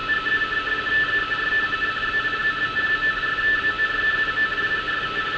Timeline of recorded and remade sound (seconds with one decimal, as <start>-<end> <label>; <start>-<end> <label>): 0.0-5.4 recorded